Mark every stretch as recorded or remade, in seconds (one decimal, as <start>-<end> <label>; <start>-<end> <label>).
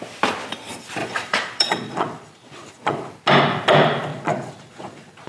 0.0-1.0 recorded; 1.0-3.1 remade; 3.1-4.1 recorded; 4.1-5.3 remade